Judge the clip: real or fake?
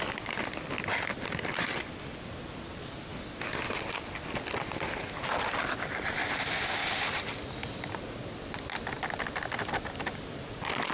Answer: real